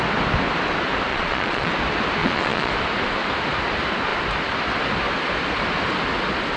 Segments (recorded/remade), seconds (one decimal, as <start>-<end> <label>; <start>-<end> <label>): 0.0-1.1 recorded; 1.1-1.7 remade; 1.7-2.2 recorded; 2.2-2.7 remade; 2.7-6.6 recorded